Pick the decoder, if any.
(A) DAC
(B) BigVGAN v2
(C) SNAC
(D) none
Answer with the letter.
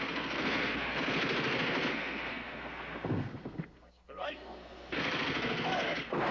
C